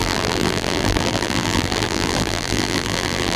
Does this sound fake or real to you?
fake